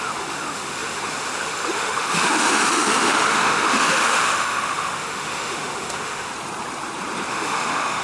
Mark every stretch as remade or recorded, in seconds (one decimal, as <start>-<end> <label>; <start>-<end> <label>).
0.0-6.3 remade; 6.3-7.3 recorded; 7.3-8.0 remade